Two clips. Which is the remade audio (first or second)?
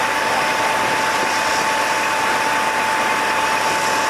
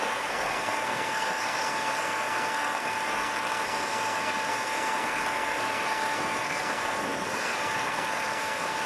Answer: second